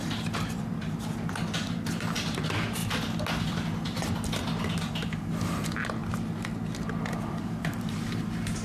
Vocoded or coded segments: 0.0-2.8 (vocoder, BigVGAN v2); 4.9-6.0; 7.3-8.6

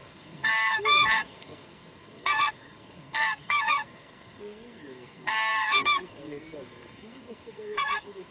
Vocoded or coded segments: 0.0-8.3 (codec, SNAC)

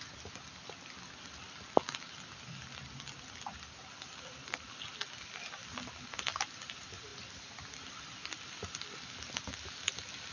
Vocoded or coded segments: none

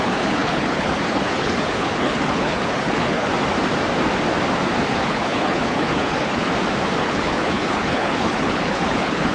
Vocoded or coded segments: 0.0-3.3 (codec, HILCodec); 4.9-6.5; 7.0-9.3

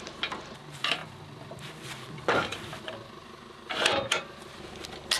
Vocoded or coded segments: none

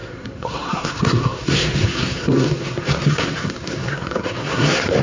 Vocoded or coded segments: 0.0-5.0 (codec, SNAC)